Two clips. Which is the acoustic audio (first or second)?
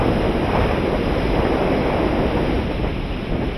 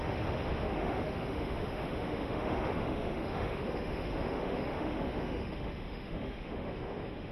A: first